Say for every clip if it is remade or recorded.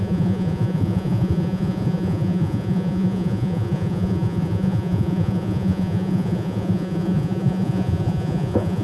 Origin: remade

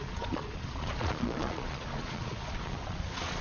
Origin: remade